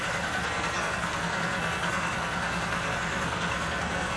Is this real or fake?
fake